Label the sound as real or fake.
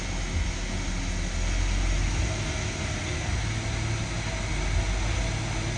real